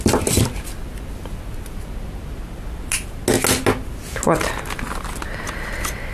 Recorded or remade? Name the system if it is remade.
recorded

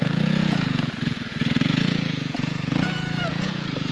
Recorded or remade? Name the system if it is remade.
remade, vocoder, Vocos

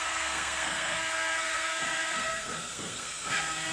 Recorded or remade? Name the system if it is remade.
remade, codec, SNAC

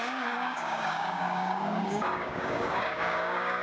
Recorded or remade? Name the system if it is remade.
remade, codec, DAC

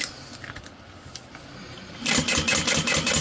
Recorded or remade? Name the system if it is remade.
recorded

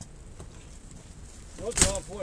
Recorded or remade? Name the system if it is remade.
recorded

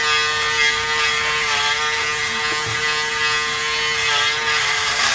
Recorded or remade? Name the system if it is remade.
recorded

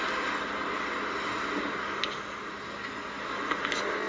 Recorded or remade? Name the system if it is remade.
recorded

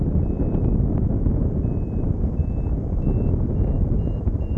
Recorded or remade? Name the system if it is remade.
recorded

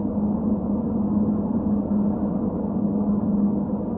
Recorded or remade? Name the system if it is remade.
recorded